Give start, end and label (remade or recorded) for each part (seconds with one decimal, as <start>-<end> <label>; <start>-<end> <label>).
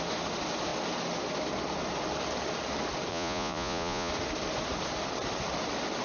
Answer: 0.0-3.1 recorded; 3.1-4.1 remade; 4.1-6.0 recorded